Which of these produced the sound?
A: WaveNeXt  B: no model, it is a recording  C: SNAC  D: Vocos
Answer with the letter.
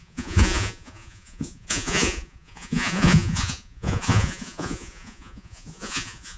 D